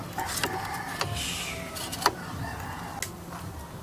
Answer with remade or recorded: recorded